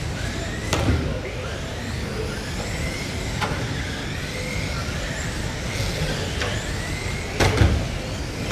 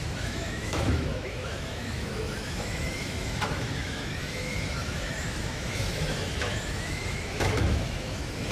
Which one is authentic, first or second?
first